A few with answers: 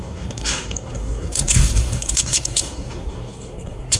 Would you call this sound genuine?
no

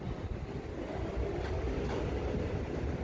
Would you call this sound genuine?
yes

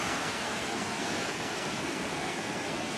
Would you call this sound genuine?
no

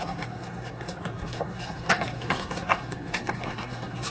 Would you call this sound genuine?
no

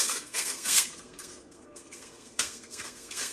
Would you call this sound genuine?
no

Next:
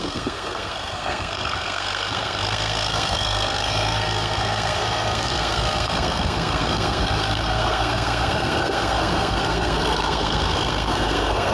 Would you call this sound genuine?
no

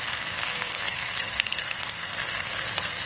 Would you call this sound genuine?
no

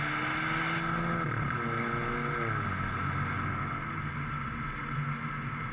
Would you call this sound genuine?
yes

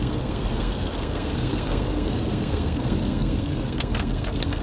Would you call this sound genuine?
no